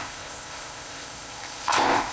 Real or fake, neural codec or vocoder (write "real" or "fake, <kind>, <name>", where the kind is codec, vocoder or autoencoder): fake, codec, ZipCodec